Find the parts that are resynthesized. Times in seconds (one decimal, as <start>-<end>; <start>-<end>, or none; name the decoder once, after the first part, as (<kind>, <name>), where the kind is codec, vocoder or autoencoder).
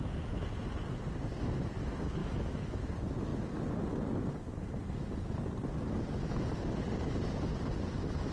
2.2-2.9 (autoencoder, DAC-VAE)